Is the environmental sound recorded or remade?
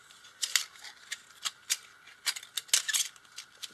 recorded